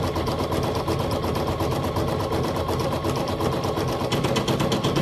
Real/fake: real